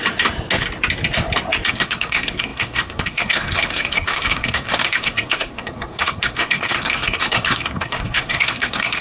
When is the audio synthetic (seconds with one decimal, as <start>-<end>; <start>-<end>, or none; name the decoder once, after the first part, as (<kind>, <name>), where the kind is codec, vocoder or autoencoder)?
1.7-9.0 (codec, SNAC)